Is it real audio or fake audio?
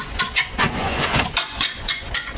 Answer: fake